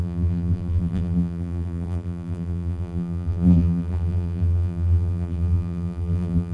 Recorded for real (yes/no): no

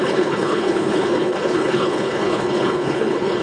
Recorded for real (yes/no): no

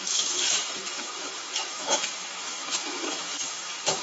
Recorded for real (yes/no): no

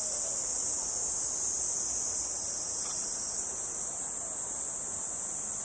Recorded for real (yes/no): yes